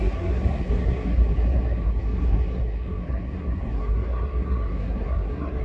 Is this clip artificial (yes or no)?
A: yes